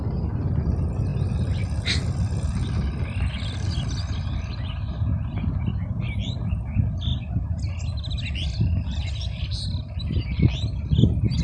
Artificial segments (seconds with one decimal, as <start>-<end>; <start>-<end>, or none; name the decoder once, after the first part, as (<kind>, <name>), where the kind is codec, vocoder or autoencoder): none